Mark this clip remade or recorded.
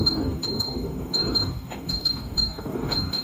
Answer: remade